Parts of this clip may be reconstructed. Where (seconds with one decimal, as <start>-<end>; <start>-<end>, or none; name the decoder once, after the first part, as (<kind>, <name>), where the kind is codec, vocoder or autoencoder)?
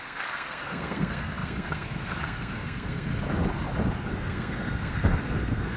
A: 0.0-3.1 (codec, SNAC); 3.9-5.8